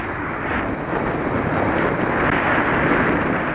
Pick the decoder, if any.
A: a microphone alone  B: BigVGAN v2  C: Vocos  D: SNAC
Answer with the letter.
A